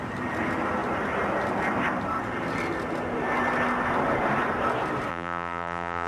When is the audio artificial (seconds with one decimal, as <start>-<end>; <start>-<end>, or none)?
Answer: 5.1-6.1